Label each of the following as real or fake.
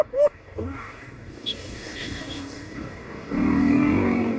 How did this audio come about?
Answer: fake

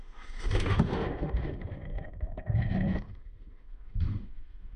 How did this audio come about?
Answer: fake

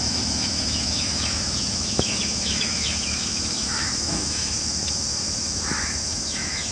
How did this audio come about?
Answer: fake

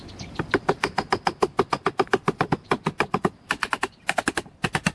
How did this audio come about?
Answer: real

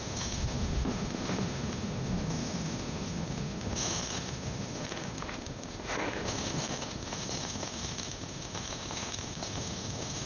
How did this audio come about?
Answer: fake